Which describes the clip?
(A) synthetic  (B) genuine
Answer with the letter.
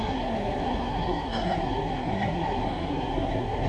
A